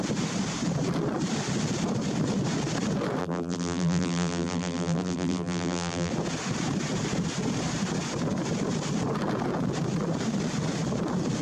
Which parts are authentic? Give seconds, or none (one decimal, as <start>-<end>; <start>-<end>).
0.0-3.2; 6.1-11.4

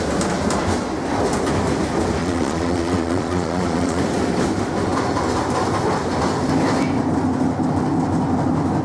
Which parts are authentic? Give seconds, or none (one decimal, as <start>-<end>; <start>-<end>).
0.0-2.2; 4.0-8.8

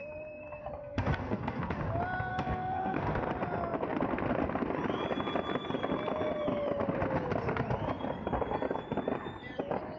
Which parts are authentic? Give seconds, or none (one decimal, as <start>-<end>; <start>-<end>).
0.0-0.8; 1.8-2.3; 3.2-10.0

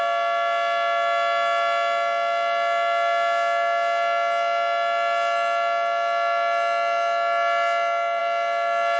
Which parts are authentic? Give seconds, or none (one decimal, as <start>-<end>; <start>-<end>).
0.0-9.0

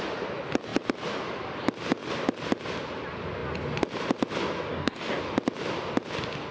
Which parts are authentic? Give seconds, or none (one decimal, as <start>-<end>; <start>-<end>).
0.0-4.7; 5.2-6.5